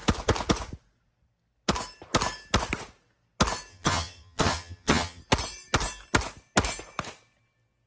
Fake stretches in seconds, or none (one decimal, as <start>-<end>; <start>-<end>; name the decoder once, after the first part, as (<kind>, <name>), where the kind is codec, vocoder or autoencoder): 3.7-5.2 (vocoder, HiFi-GAN)